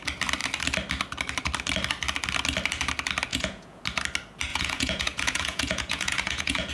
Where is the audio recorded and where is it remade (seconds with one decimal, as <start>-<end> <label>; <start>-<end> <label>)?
0.0-3.3 recorded; 3.3-3.8 remade; 3.8-4.5 recorded; 4.5-6.7 remade

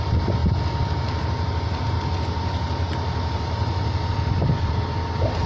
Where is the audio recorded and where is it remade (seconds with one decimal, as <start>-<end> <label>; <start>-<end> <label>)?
0.0-5.5 recorded

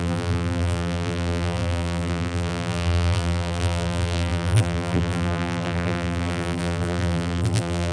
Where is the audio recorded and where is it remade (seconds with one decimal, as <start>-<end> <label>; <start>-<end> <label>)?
0.0-7.9 remade

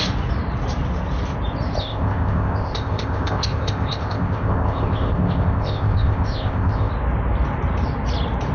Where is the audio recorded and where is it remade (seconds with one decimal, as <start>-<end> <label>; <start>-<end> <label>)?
0.0-1.8 recorded; 1.8-6.9 remade; 6.9-8.5 recorded

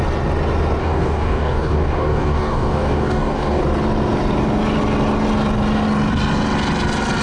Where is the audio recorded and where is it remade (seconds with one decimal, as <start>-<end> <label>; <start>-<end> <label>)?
0.0-0.8 recorded; 0.8-3.6 remade; 3.6-7.2 recorded